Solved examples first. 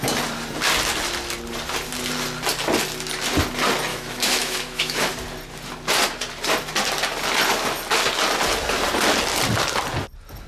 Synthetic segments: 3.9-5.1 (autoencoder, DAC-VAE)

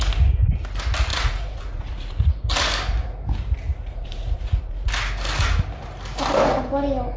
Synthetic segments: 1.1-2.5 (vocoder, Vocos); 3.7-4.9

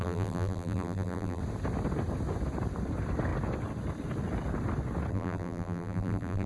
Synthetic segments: 0.0-1.4 (vocoder, BigVGAN v2); 5.1-6.5

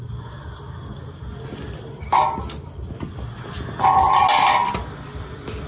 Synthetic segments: 4.6-5.7 (vocoder, BigVGAN v2)